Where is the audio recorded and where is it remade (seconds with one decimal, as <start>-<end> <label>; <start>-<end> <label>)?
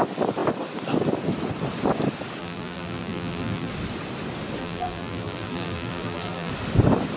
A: 0.0-2.4 recorded; 2.4-3.7 remade; 3.7-4.6 recorded; 4.6-6.5 remade; 6.5-7.2 recorded